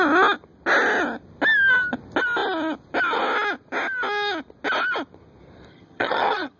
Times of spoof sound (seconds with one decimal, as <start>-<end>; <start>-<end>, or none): 5.7-6.6